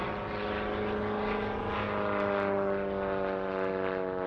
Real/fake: real